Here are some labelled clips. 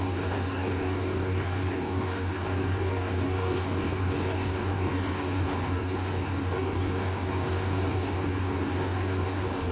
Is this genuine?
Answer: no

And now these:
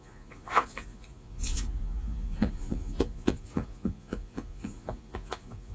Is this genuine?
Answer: no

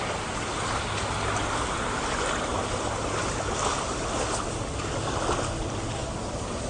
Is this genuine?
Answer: yes